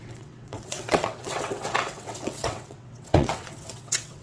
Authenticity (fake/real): fake